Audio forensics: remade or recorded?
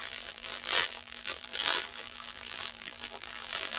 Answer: remade